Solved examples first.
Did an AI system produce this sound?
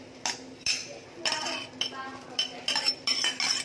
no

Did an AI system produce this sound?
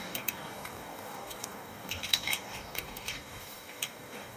yes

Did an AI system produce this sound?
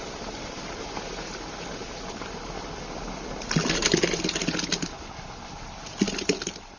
no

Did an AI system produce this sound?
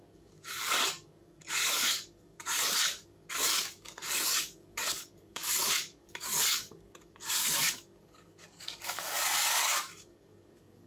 yes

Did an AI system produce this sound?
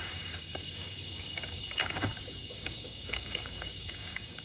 yes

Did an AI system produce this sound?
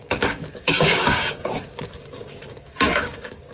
yes